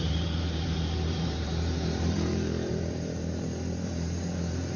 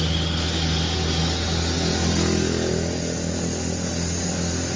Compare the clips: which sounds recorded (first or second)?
second